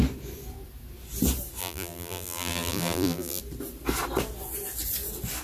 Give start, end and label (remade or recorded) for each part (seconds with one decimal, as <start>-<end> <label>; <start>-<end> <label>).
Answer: 0.0-1.6 recorded; 1.6-3.4 remade; 3.4-5.4 recorded